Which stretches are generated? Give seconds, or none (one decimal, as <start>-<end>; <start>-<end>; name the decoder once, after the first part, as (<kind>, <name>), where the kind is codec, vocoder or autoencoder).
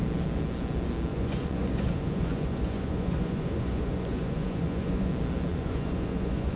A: 1.1-5.1 (vocoder, Vocos); 5.5-6.6